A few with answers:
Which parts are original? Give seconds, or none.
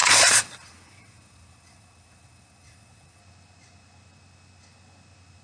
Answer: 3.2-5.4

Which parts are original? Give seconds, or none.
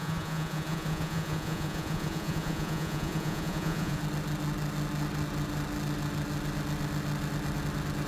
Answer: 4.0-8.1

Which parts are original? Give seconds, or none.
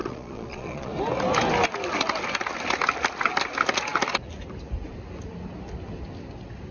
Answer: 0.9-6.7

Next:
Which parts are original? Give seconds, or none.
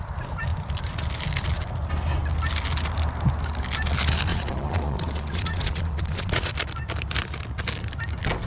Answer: 0.0-4.3; 6.5-8.5